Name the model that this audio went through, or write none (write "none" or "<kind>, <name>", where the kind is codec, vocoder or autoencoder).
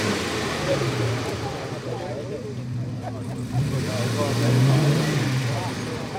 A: vocoder, BigVGAN v2